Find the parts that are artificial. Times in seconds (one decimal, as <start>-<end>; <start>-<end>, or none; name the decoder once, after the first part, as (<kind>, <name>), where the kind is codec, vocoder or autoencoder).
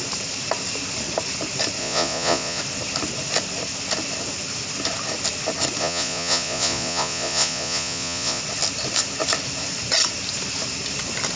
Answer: 1.8-2.6 (vocoder, Vocos); 5.8-8.4